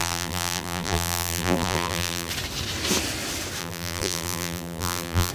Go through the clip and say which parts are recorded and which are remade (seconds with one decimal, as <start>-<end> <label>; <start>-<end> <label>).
0.0-2.3 remade; 2.3-3.6 recorded; 3.6-5.3 remade